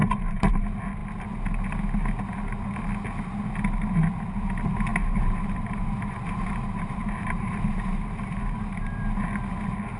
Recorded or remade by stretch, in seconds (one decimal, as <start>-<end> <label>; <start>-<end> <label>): 0.0-0.6 remade; 0.6-4.9 recorded; 4.9-9.2 remade; 9.2-10.0 recorded